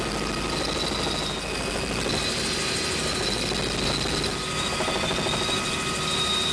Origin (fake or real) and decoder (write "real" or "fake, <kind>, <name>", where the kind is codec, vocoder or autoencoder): real